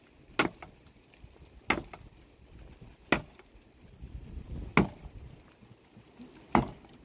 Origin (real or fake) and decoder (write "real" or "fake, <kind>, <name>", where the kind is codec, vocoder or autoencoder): real